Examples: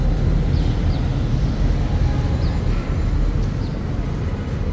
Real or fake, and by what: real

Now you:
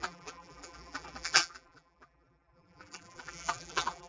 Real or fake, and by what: fake, vocoder, BigVGAN v2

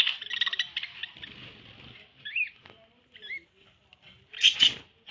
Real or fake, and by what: real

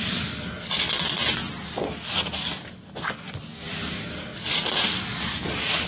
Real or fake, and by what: real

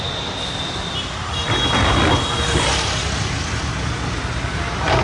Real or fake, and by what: real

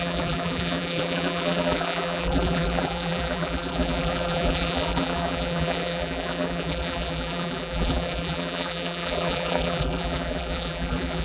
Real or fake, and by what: fake, vocoder, BigVGAN v2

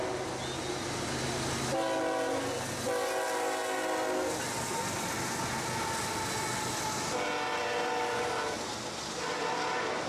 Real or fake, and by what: real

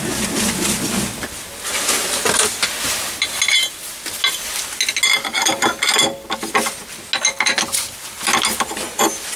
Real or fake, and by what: real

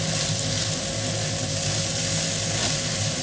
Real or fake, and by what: real